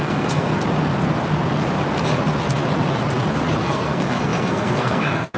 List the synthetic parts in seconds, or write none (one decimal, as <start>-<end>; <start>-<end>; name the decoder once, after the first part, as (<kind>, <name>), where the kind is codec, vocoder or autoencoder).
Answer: 0.0-0.5 (codec, SNAC); 3.6-5.4